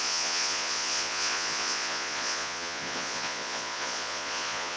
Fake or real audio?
fake